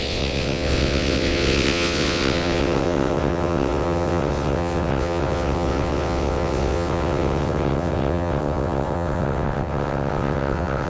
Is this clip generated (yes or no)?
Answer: yes